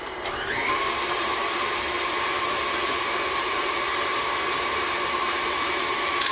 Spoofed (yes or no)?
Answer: yes